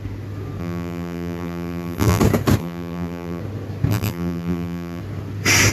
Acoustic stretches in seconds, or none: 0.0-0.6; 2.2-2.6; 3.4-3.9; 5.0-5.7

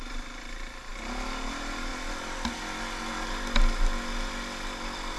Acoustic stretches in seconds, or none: 0.0-5.2

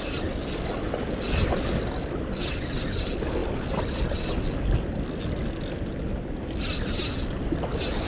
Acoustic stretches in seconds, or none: 0.0-8.1